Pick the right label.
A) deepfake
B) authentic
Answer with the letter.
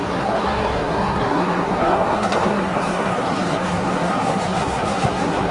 A